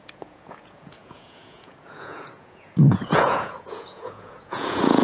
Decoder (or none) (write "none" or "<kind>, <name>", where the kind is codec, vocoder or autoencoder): vocoder, Vocos